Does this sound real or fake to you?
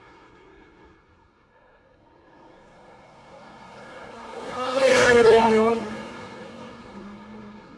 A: fake